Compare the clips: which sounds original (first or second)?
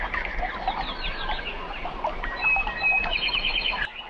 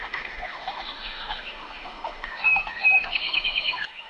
first